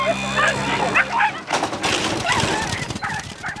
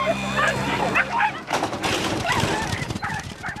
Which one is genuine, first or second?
first